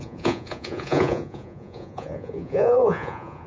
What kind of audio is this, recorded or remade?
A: remade